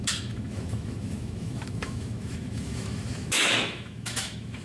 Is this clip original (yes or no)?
no